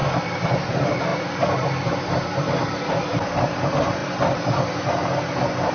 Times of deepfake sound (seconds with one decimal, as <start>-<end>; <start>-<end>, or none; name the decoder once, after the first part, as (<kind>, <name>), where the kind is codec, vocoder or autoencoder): 0.0-5.7 (vocoder, BigVGAN v2)